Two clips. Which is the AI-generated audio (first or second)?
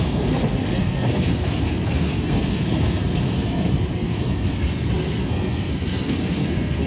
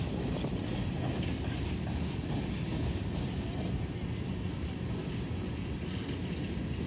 first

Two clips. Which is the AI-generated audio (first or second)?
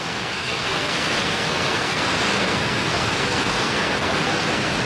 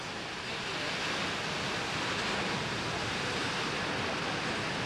first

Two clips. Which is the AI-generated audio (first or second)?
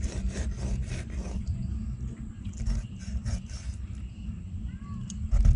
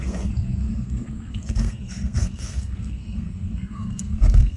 second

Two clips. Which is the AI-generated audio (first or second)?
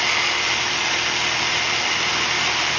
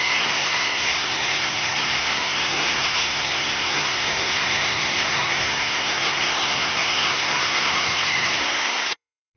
second